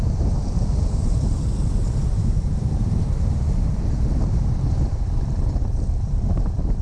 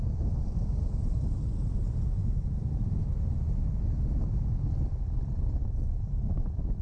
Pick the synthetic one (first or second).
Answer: first